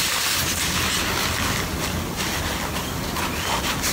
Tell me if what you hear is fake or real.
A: real